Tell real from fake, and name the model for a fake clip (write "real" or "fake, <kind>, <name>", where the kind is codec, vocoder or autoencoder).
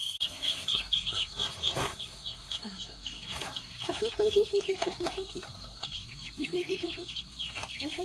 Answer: fake, codec, SNAC